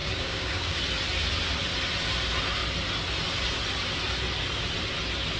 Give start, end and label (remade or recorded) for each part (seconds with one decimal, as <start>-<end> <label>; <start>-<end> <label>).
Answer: 0.0-0.8 remade; 0.8-5.4 recorded